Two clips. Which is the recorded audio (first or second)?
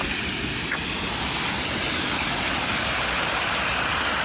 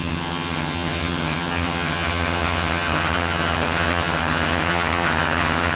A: first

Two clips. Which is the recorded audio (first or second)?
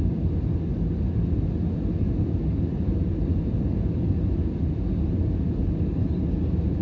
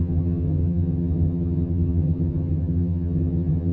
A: first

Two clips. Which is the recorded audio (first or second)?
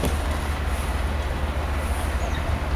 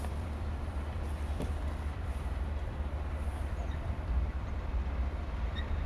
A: first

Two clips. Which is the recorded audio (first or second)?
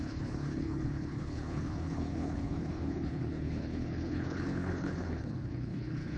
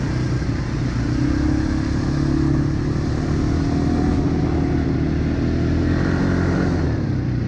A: second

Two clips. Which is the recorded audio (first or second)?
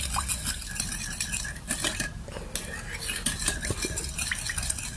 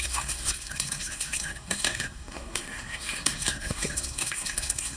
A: first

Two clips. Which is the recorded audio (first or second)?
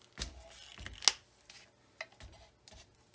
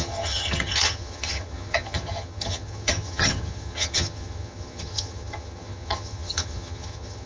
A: first